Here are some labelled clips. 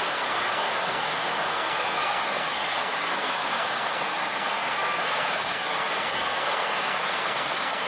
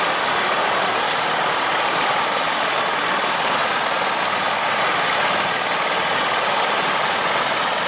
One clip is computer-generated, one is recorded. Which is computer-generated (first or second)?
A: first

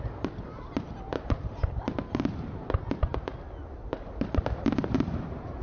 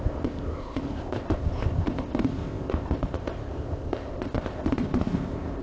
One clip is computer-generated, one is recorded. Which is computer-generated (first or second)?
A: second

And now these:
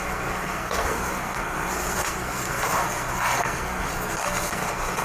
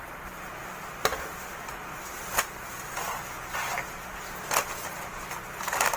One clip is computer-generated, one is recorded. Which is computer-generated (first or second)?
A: first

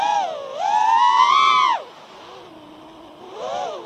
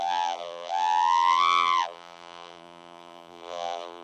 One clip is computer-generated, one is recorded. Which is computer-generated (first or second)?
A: second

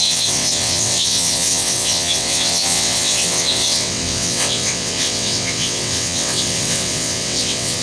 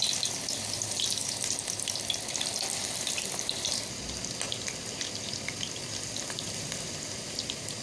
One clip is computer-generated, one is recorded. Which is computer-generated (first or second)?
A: first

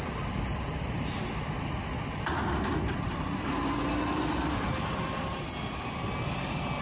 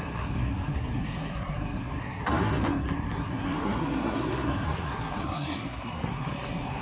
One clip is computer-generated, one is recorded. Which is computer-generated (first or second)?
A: second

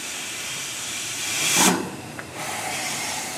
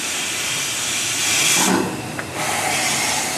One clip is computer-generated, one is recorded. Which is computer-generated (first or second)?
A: first